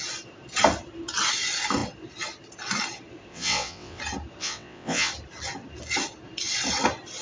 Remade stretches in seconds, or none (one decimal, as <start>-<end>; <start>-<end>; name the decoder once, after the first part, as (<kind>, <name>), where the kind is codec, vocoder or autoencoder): 3.3-4.0 (vocoder, WaveNeXt); 4.4-5.1